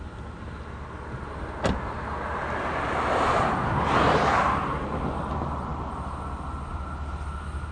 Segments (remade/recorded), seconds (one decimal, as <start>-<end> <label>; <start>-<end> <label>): 0.0-5.7 recorded; 5.7-6.8 remade; 6.8-7.7 recorded